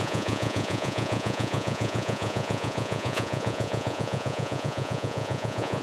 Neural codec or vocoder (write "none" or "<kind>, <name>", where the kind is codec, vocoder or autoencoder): vocoder, Vocos